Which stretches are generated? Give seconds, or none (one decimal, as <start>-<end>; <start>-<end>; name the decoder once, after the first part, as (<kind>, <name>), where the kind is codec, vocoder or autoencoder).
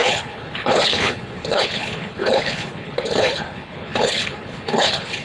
0.0-5.2 (codec, HILCodec)